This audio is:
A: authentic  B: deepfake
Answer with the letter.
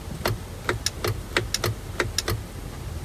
A